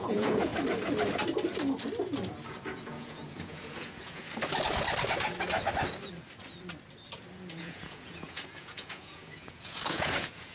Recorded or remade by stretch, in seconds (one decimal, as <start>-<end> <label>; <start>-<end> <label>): 0.0-0.5 remade; 0.5-2.8 recorded; 2.8-4.2 remade; 4.2-7.6 recorded; 7.6-10.5 remade